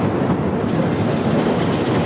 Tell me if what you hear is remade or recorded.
recorded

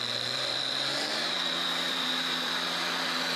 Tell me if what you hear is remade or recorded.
remade